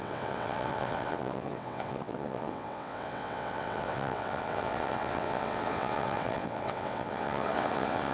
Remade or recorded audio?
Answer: remade